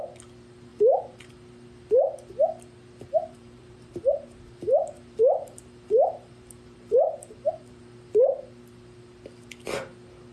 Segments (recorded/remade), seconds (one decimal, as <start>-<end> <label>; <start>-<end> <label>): 0.0-0.7 recorded; 0.7-1.3 remade; 1.3-3.2 recorded; 3.2-7.8 remade; 7.8-10.3 recorded